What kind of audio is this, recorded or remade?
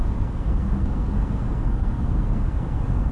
remade